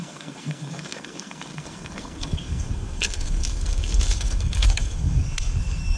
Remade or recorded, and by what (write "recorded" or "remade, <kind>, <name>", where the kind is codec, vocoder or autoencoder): remade, codec, SNAC